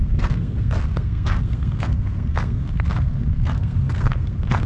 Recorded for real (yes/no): no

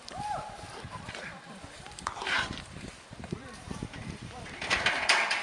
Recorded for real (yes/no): no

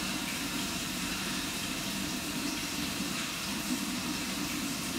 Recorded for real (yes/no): no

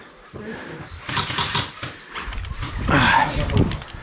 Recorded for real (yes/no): yes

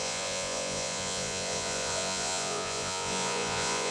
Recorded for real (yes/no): no